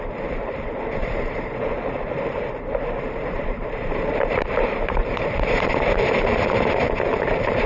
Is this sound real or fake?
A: fake